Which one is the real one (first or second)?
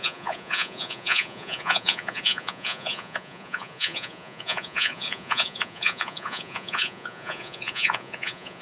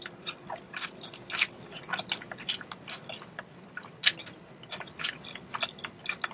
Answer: second